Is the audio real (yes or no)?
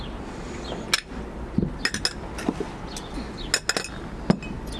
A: yes